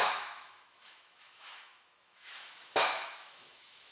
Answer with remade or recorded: remade